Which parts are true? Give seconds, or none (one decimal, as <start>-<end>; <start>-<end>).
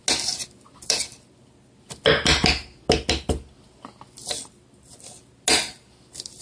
0.0-6.4